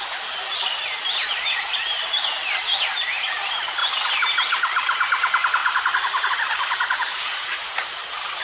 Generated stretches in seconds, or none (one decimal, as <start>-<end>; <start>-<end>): 0.0-5.6; 6.3-8.4